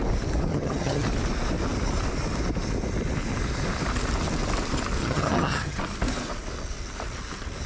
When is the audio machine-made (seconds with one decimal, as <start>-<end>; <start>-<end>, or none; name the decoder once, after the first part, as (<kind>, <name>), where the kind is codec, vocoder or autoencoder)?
0.5-1.1 (vocoder, HiFi-GAN); 5.0-5.8